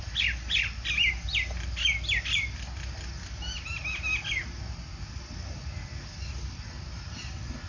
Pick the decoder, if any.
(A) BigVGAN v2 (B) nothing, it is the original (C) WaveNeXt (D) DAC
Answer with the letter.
B